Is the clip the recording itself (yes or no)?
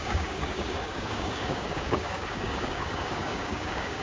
no